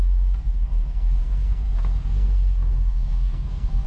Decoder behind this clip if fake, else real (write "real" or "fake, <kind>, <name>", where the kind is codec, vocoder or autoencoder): fake, codec, SNAC